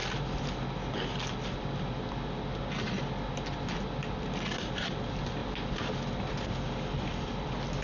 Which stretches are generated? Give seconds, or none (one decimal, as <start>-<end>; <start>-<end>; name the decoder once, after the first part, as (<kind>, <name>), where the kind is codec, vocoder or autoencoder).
none

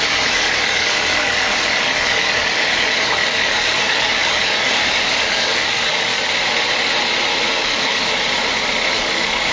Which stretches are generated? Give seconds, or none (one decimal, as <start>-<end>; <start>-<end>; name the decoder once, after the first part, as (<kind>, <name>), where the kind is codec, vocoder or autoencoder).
0.0-6.1 (codec, DAC); 7.5-8.0; 8.9-9.5

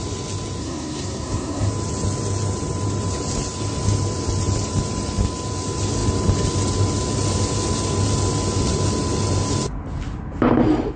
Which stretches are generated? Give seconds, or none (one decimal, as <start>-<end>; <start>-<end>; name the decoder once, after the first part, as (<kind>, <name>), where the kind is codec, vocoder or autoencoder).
0.6-1.7 (codec, SNAC)

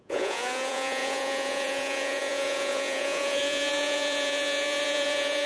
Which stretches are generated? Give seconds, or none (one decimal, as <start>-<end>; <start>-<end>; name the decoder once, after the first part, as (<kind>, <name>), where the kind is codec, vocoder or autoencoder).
0.0-5.5 (vocoder, Vocos)

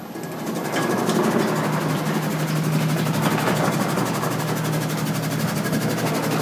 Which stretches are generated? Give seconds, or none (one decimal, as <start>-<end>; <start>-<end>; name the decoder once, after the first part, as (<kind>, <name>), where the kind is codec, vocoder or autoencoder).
none

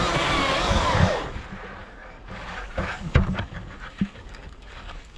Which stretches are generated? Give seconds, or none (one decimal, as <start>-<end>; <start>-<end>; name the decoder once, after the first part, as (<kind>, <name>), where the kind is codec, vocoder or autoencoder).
0.4-1.4 (codec, DAC); 1.8-5.2